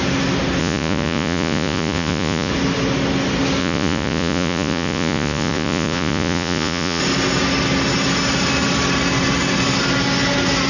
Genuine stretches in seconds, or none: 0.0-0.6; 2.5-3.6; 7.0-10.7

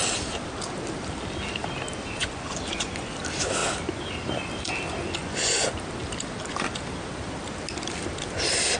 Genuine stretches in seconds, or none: 0.0-2.2; 3.1-5.2; 5.7-8.8

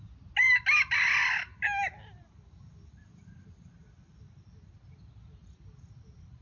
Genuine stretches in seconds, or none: 0.0-6.4

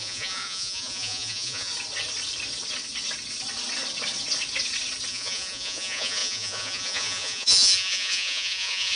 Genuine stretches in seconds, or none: 1.7-5.1

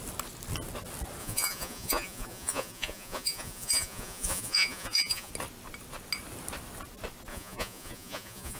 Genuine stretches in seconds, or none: 0.0-1.2; 5.3-7.3

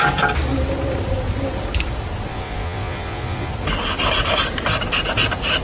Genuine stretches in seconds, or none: 0.0-2.3; 3.5-5.6

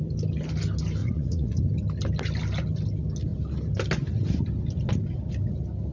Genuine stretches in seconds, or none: 0.0-1.0; 1.7-5.9